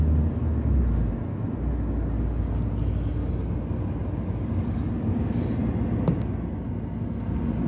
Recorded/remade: recorded